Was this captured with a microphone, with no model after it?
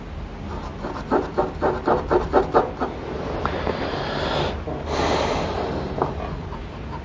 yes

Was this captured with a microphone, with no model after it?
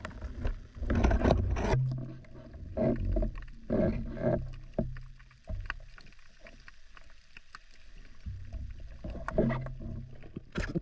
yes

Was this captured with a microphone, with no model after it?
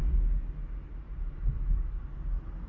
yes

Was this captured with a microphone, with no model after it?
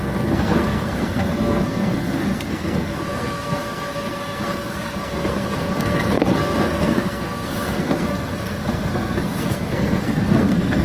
no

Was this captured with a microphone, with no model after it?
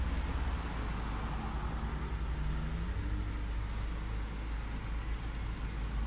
yes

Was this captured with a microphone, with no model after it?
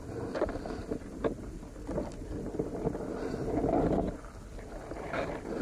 yes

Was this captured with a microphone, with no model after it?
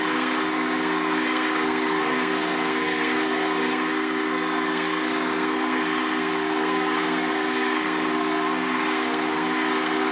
no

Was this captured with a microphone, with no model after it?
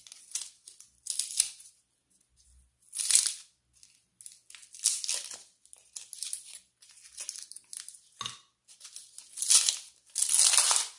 yes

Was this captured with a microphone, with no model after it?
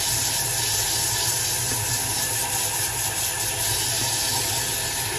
yes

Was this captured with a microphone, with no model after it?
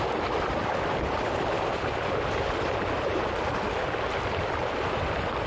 yes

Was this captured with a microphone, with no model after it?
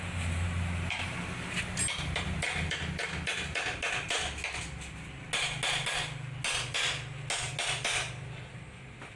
yes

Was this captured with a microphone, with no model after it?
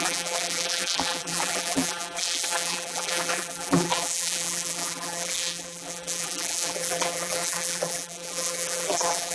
no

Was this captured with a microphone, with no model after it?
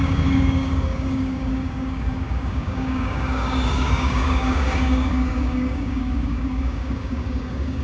no